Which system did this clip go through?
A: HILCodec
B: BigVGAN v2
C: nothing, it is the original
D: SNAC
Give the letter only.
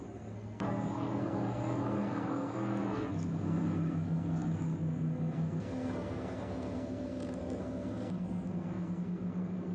D